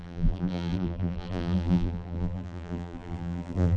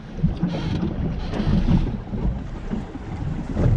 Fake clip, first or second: first